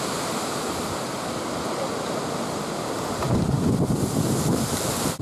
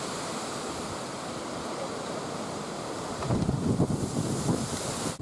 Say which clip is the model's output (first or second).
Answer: second